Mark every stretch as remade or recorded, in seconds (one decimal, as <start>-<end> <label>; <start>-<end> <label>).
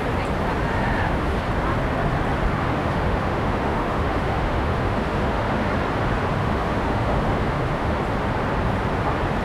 0.0-0.7 recorded; 0.7-1.4 remade; 1.4-2.6 recorded; 2.6-5.7 remade; 5.7-6.4 recorded; 6.4-8.0 remade; 8.0-9.4 recorded